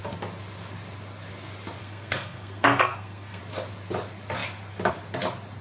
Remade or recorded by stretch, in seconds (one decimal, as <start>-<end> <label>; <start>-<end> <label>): 0.0-1.8 recorded; 1.8-3.4 remade; 3.4-5.6 recorded

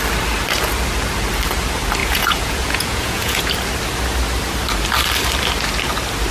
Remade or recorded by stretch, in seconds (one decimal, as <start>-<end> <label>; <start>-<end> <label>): 0.0-2.0 recorded; 2.0-3.5 remade; 3.5-6.3 recorded

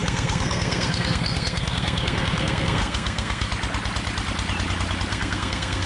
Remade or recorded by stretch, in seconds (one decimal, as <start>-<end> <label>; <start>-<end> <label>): 0.0-3.5 remade; 3.5-5.1 recorded; 5.1-5.9 remade